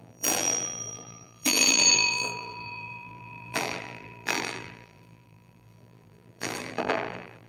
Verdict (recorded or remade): remade